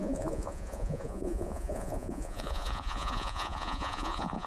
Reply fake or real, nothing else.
fake